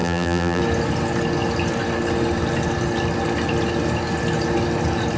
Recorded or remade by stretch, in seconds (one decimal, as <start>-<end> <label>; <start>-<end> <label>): 0.0-0.6 remade; 0.6-5.2 recorded